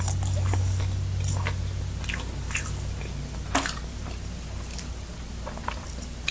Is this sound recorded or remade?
recorded